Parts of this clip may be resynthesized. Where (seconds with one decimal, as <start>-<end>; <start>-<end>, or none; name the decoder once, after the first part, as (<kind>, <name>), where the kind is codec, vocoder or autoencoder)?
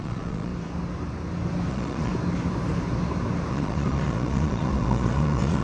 0.0-0.5 (vocoder, Vocos); 1.7-2.1; 3.5-5.6